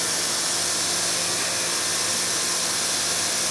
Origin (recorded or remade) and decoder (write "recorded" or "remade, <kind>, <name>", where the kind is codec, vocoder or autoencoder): recorded